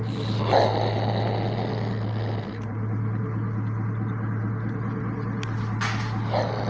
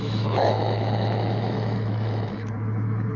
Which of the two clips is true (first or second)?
first